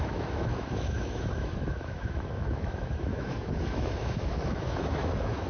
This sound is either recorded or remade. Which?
remade